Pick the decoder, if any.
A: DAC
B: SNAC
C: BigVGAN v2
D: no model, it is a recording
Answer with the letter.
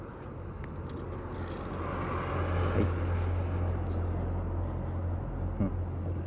D